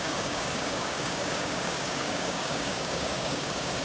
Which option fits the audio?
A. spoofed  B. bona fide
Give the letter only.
A